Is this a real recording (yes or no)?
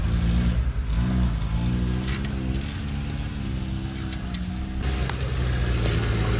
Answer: yes